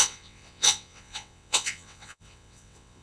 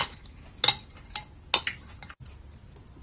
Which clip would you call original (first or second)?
second